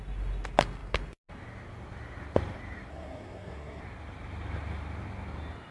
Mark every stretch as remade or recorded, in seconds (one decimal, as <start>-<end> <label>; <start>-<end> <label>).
0.0-2.9 recorded; 2.9-3.8 remade; 3.8-5.7 recorded